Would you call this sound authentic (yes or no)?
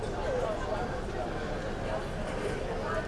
yes